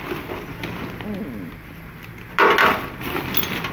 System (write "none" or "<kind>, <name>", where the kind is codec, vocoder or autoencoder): none